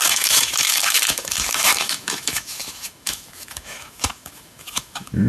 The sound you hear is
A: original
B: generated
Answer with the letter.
B